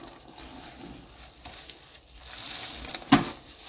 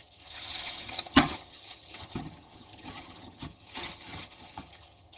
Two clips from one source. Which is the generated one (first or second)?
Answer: second